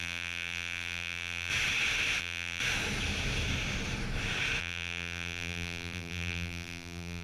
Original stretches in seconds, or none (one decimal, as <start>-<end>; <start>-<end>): 1.5-2.2; 2.6-4.6